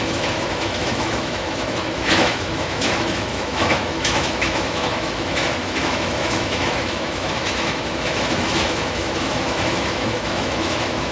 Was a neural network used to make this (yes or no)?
yes